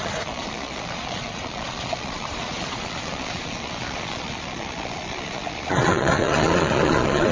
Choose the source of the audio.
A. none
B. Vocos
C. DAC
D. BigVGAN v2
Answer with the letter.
B